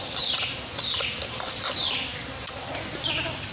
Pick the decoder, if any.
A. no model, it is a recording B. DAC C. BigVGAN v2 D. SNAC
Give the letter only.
A